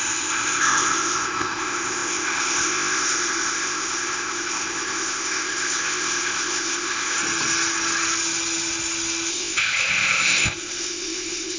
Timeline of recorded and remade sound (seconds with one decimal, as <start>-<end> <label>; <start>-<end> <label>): 0.0-7.2 remade; 7.2-9.3 recorded; 9.3-11.6 remade